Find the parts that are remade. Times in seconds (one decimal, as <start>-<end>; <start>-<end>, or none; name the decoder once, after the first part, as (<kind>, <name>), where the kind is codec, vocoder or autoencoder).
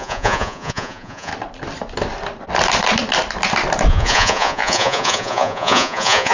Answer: 0.0-1.3 (vocoder, Vocos); 3.9-6.3